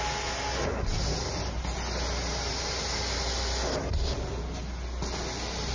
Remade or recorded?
recorded